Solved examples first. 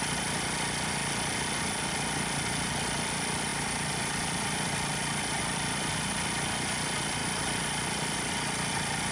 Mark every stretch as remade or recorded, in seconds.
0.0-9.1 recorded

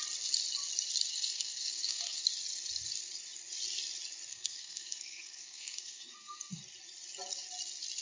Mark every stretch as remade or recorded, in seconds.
0.0-1.1 recorded; 1.1-2.2 remade; 2.2-4.3 recorded; 4.3-6.6 remade; 6.6-8.0 recorded

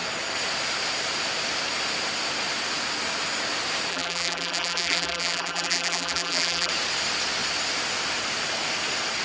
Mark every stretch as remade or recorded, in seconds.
0.0-3.9 recorded; 3.9-6.7 remade; 6.7-9.2 recorded

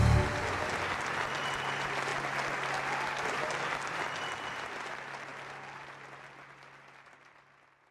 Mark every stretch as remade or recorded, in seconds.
0.0-7.9 recorded